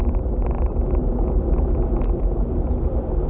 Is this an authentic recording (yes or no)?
yes